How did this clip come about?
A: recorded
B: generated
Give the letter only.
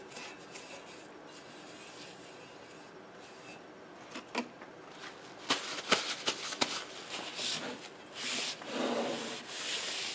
A